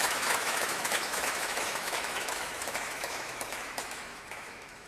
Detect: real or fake fake